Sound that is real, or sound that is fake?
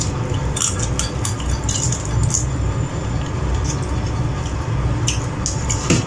real